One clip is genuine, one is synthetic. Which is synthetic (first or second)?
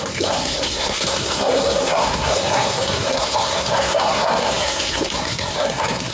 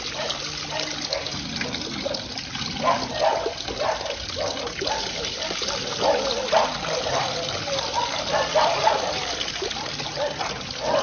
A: first